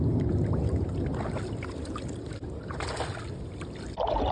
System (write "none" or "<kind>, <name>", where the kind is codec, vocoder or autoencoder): none